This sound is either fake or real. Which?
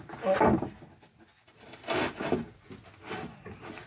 real